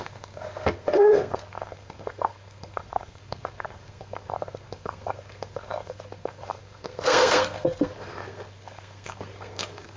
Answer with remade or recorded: remade